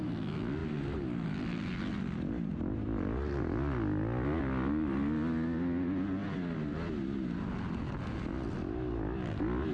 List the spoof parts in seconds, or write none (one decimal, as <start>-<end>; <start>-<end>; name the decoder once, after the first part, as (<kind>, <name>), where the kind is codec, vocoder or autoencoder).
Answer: none